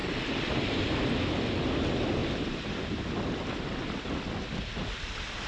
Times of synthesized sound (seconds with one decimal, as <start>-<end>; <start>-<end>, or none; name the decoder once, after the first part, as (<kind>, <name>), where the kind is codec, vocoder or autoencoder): 0.0-1.1 (vocoder, BigVGAN v2); 2.2-3.0